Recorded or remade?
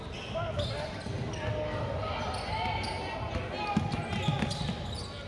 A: recorded